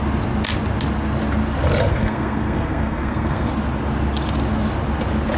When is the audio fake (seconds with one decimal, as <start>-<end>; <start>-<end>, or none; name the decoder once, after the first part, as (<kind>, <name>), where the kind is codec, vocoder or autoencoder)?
1.9-3.5 (codec, SNAC)

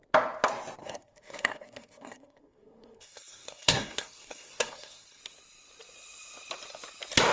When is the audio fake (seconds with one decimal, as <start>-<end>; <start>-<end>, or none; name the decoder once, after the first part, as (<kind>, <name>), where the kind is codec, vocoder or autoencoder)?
0.8-5.2 (codec, SNAC)

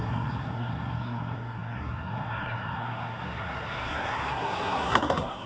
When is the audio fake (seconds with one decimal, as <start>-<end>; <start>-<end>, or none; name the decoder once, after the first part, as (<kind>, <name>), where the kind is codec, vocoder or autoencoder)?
0.0-5.5 (codec, SNAC)

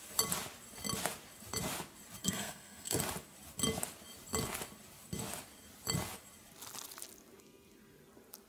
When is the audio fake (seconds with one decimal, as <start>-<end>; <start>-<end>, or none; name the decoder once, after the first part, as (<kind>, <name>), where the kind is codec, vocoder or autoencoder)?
2.2-3.0 (codec, SNAC)

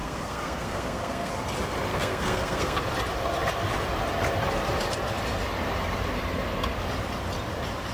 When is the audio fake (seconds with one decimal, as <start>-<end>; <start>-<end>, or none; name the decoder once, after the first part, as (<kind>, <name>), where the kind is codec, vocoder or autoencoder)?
0.0-1.3 (codec, SNAC); 1.9-2.8

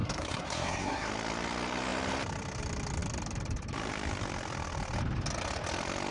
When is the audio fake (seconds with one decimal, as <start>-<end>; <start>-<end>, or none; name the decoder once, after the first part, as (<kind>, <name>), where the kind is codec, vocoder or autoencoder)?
0.0-1.1 (codec, SNAC)

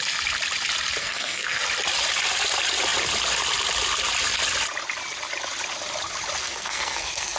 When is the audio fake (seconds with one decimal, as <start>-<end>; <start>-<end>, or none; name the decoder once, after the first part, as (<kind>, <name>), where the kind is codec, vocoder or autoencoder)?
1.0-1.6 (codec, SNAC); 6.4-7.4

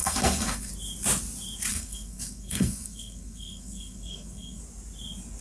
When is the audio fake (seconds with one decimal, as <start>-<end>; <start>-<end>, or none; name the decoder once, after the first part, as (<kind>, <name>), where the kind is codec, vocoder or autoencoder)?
0.0-0.7 (codec, SNAC); 1.7-4.6